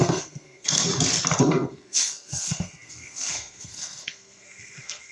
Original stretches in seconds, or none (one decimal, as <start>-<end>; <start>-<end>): 0.9-1.4